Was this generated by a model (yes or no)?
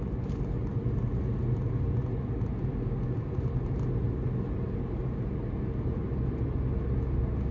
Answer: no